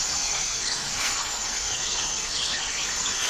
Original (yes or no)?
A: no